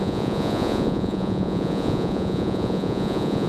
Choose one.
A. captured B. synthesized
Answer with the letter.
B